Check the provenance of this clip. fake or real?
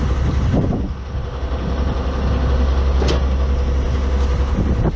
real